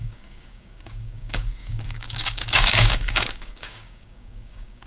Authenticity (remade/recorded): remade